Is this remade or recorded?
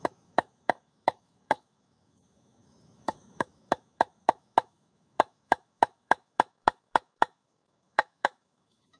remade